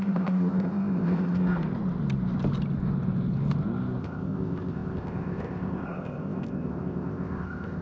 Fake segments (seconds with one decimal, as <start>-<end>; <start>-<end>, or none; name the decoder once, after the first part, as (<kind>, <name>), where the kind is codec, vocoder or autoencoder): 0.0-1.4 (codec, ZipCodec); 4.0-7.8